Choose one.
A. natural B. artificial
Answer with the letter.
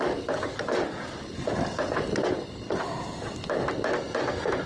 A